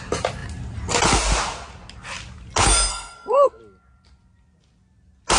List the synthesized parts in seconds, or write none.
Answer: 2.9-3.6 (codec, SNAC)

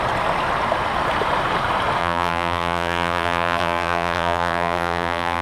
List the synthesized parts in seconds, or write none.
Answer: 2.0-5.4 (vocoder, BigVGAN v2)

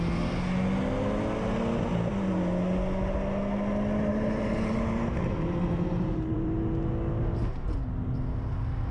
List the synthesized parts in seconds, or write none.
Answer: 4.1-6.9 (vocoder, BigVGAN v2)

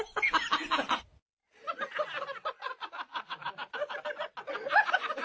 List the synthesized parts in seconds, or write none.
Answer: none

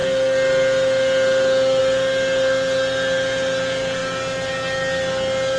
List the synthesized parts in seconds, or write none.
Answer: none

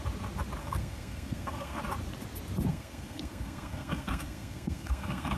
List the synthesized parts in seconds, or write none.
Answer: 0.6-1.8 (codec, SNAC); 2.7-5.4